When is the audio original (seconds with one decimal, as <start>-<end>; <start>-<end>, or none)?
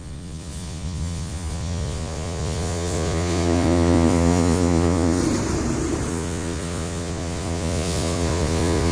5.2-6.1